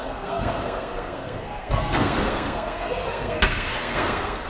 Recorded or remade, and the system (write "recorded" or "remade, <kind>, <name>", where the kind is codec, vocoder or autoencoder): remade, codec, SNAC